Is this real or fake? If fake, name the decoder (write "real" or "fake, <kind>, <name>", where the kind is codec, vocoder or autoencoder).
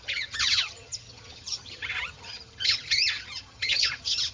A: fake, vocoder, HiFi-GAN